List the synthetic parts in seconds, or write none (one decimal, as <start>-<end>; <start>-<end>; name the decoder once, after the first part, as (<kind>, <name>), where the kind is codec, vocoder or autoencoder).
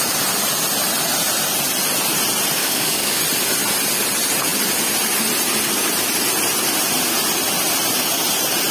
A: 2.6-3.2 (codec, DAC)